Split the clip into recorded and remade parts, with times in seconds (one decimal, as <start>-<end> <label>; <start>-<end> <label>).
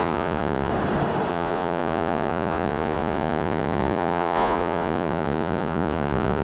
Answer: 0.0-0.7 remade; 0.7-1.3 recorded; 1.3-6.4 remade